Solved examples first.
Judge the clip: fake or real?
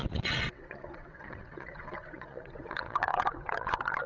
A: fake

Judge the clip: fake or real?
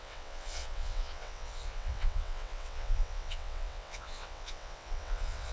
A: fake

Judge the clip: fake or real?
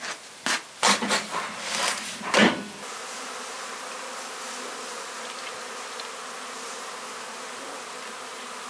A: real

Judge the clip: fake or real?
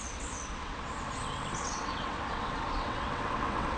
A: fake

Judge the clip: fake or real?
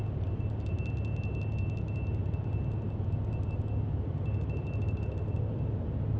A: real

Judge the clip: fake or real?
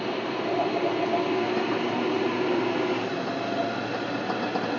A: real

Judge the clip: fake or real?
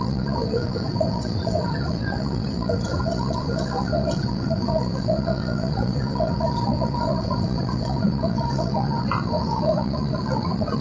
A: fake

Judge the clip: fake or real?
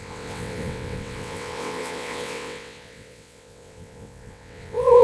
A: fake